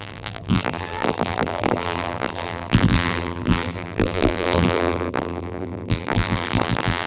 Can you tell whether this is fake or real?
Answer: fake